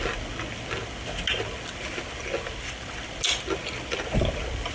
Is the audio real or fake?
real